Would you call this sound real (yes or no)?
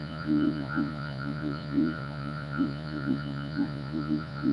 no